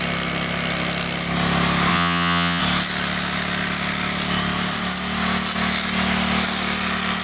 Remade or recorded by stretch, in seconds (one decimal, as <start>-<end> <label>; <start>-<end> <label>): 0.0-1.9 recorded; 1.9-2.6 remade; 2.6-7.2 recorded